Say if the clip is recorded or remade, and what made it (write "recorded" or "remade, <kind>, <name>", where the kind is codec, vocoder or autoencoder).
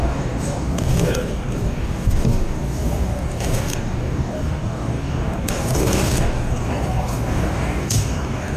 remade, codec, DAC